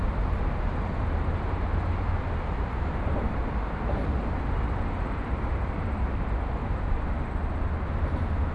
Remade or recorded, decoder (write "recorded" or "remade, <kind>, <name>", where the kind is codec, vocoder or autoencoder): recorded